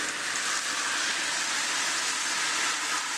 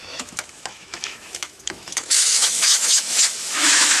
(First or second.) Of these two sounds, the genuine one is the first